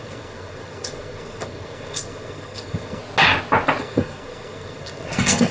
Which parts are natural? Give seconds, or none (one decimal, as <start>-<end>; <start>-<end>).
3.0-3.8